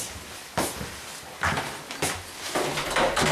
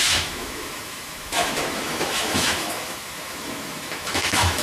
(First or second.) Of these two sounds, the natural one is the first